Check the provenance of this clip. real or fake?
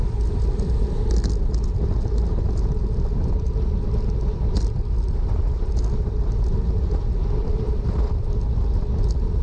real